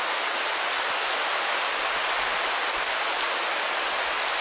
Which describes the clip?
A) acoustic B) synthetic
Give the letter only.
A